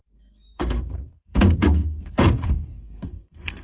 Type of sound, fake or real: fake